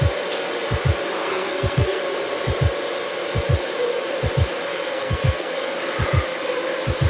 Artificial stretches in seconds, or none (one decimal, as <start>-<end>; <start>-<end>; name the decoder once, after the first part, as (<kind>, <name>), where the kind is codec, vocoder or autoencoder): 1.2-2.0 (codec, SNAC); 4.7-5.7